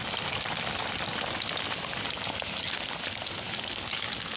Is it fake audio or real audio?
real